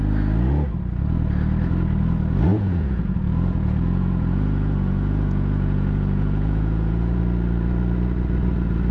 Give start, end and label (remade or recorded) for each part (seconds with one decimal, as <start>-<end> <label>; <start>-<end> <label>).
0.0-2.5 recorded; 2.5-7.2 remade; 7.2-8.9 recorded